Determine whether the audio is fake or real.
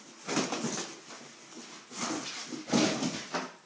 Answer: real